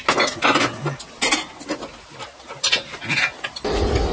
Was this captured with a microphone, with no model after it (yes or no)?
yes